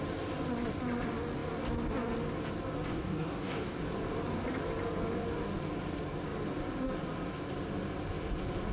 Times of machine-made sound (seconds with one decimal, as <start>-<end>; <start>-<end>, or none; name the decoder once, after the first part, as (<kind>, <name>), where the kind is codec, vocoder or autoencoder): 2.9-3.8 (codec, DAC)